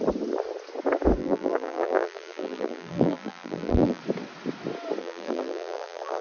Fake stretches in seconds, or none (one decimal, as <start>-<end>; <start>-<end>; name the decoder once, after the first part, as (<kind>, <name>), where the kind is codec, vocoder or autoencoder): 1.2-4.0 (vocoder, BigVGAN v2); 5.0-6.2